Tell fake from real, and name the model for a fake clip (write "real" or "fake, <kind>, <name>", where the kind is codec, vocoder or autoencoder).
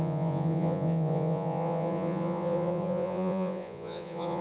fake, vocoder, Vocos